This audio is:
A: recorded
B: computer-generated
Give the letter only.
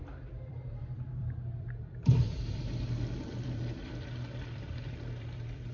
B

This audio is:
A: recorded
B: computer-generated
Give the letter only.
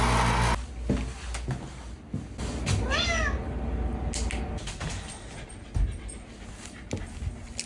A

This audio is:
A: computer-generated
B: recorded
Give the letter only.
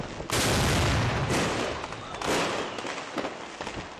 B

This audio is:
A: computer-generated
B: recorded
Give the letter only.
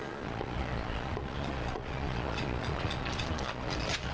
A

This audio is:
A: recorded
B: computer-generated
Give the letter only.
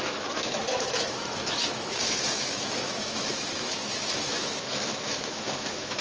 B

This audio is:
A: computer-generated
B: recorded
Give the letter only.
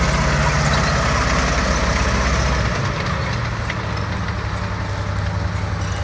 B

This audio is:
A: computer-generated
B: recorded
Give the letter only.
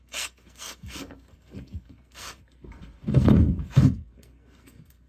A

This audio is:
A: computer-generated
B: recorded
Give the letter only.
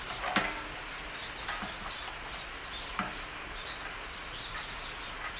B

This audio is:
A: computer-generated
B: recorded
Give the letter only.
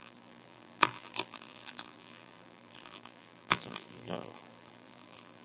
A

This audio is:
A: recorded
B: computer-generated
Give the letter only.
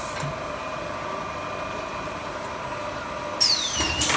A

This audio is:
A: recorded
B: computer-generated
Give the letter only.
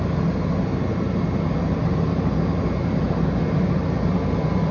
A